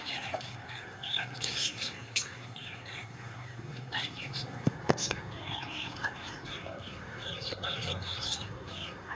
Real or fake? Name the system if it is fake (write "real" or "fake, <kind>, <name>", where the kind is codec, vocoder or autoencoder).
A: fake, codec, SNAC